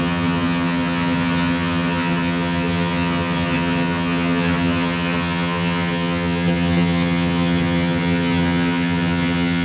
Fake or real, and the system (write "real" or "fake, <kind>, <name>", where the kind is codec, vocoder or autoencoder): fake, vocoder, HiFi-GAN